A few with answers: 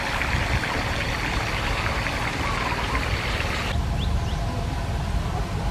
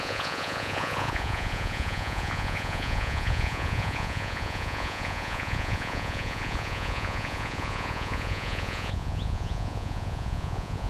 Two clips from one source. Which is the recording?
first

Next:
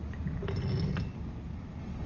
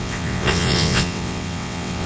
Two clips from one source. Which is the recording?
first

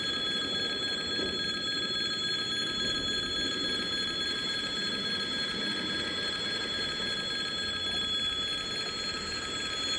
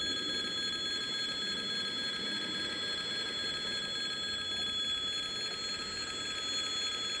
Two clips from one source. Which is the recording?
second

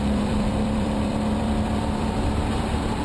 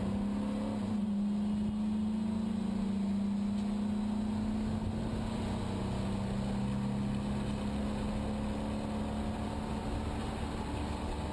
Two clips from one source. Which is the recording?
second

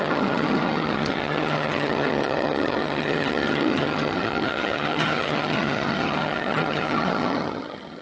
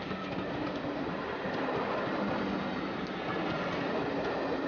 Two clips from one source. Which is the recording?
second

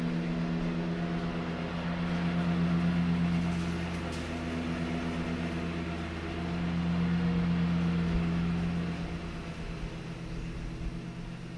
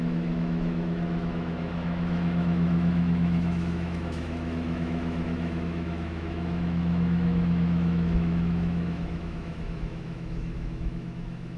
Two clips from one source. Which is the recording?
first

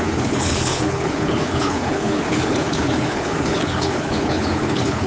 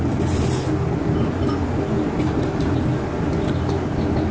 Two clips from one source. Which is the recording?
second